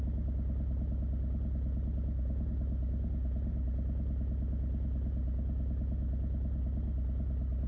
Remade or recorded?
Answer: recorded